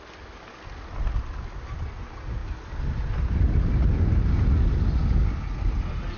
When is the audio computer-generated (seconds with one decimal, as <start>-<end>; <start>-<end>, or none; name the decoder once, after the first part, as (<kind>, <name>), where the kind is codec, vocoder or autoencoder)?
none